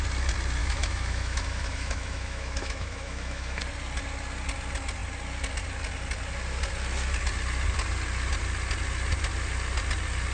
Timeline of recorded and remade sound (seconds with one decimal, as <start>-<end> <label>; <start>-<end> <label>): 0.0-0.6 recorded; 0.6-3.6 remade; 3.6-10.3 recorded